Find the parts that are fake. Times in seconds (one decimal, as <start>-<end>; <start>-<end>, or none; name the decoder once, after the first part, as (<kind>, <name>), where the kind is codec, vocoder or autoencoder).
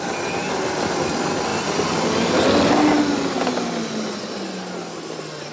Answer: none